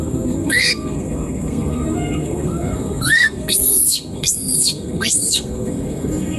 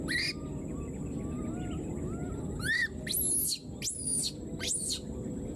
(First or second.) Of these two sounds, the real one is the second